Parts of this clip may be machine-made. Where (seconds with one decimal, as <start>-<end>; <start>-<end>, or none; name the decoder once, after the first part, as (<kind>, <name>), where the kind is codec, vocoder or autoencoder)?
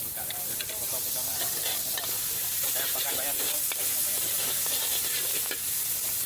0.8-1.6 (vocoder, BigVGAN v2); 4.0-5.0